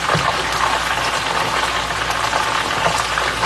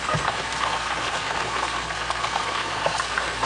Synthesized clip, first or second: second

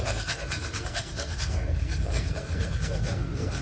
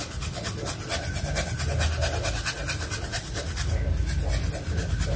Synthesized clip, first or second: first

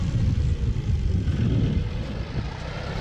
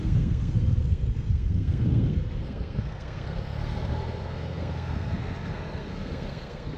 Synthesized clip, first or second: second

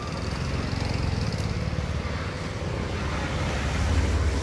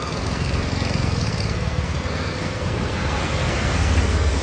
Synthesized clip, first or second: second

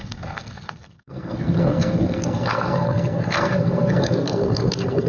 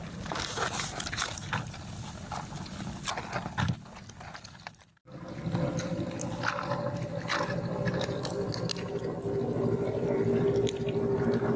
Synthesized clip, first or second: first